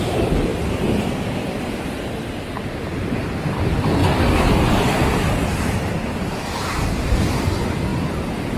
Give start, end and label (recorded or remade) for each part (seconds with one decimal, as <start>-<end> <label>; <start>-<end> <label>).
0.0-4.0 remade; 4.0-6.9 recorded; 6.9-7.9 remade; 7.9-8.6 recorded